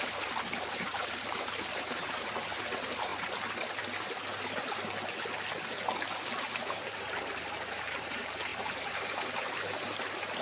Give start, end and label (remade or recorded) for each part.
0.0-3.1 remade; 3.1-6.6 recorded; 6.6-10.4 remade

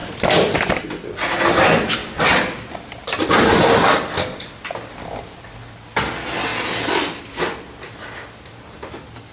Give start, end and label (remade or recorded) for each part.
0.0-0.8 remade; 0.8-2.0 recorded; 2.0-3.3 remade; 3.3-6.5 recorded; 6.5-7.4 remade; 7.4-9.3 recorded

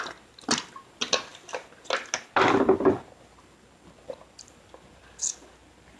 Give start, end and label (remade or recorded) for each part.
0.0-6.0 recorded

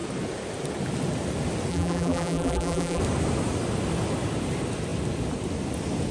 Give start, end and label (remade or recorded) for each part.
0.0-1.7 recorded; 1.7-3.0 remade; 3.0-6.1 recorded

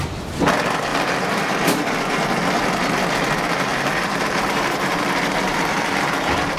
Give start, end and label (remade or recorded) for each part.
0.0-0.9 recorded; 0.9-2.2 remade; 2.2-3.7 recorded; 3.7-6.6 remade

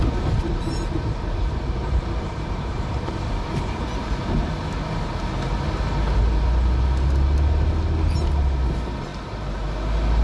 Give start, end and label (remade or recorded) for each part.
0.0-0.4 recorded; 0.4-3.1 remade; 3.1-9.1 recorded; 9.1-9.7 remade; 9.7-10.2 recorded

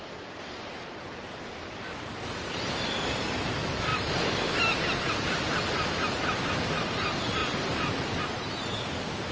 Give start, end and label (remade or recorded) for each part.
0.0-0.7 recorded; 0.7-2.7 remade; 2.7-3.9 recorded; 3.9-6.4 remade; 6.4-7.4 recorded; 7.4-8.2 remade; 8.2-9.3 recorded

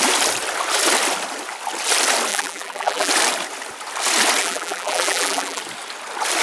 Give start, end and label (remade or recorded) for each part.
0.0-2.3 recorded; 2.3-3.1 remade; 3.1-4.4 recorded; 4.4-5.6 remade; 5.6-6.4 recorded